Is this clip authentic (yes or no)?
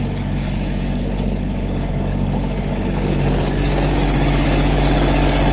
no